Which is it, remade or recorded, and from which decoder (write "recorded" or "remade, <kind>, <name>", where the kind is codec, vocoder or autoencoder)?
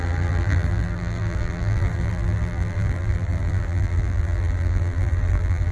remade, vocoder, BigVGAN v2